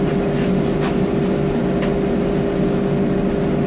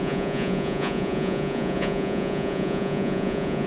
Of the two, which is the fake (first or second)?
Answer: second